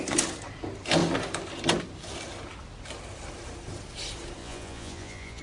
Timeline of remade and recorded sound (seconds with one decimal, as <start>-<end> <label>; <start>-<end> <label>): 0.0-4.4 recorded; 4.4-5.4 remade